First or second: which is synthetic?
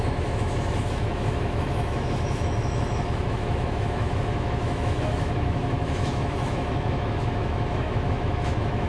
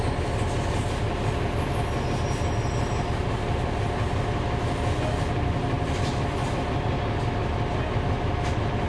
first